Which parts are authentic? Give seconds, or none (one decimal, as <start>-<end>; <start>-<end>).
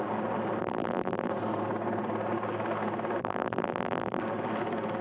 0.0-0.6; 1.3-3.2; 4.2-5.0